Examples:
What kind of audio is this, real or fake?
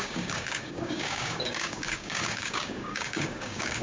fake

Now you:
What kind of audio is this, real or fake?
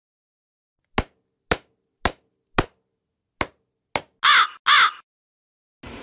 real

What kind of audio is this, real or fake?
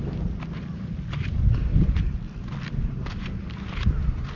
real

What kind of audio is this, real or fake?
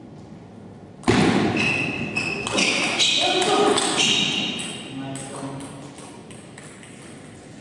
real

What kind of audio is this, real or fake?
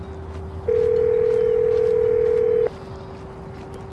real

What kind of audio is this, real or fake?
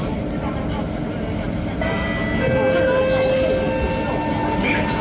real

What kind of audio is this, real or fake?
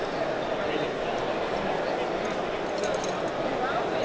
real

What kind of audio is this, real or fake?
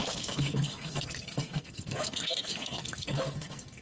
fake